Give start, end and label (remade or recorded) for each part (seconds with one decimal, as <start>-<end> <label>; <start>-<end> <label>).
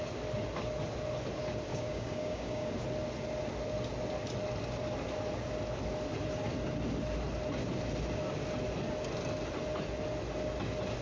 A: 0.0-1.7 recorded; 1.7-2.7 remade; 2.7-11.0 recorded